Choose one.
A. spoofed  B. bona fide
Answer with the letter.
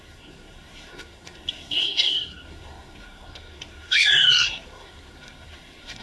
A